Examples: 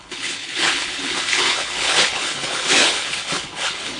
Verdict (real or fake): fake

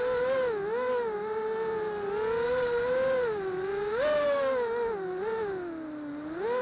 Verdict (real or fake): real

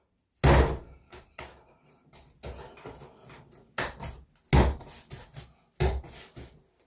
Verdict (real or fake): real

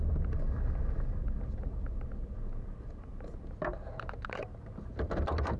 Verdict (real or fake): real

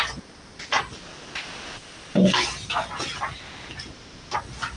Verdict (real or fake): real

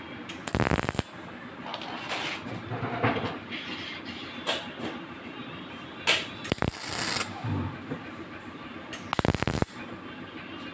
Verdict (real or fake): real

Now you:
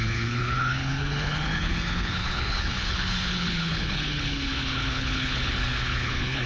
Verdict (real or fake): fake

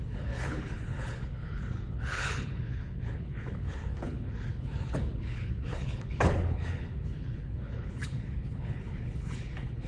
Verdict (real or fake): fake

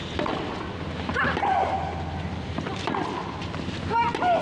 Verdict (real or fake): real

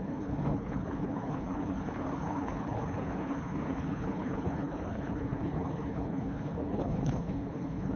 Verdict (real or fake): fake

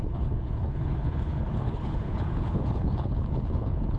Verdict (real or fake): fake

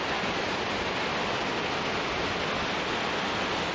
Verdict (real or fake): real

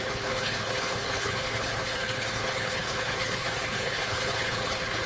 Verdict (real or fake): fake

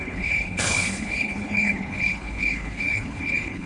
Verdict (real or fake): fake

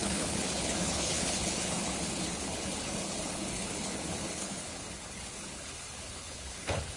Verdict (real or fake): fake